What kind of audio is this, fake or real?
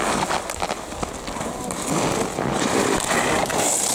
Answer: real